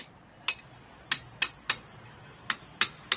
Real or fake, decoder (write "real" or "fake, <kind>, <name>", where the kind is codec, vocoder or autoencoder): real